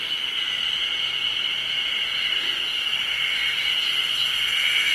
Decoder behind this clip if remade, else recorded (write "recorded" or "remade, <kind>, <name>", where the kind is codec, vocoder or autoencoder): recorded